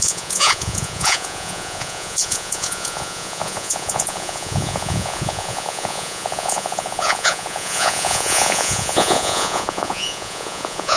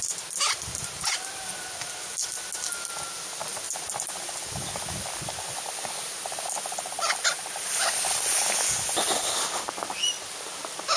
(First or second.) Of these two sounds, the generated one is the first